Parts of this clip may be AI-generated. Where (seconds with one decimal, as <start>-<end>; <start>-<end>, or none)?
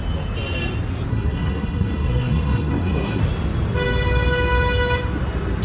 1.1-3.2